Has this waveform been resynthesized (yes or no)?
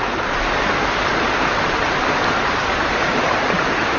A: no